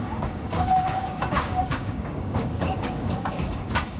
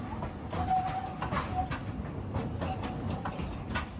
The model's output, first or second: first